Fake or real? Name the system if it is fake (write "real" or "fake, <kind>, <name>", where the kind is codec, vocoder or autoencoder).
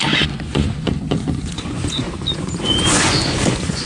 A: fake, vocoder, Vocos